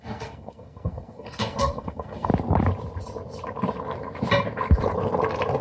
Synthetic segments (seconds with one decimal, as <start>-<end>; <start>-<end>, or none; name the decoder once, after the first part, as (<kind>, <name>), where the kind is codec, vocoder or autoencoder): 0.0-2.3 (codec, SNAC)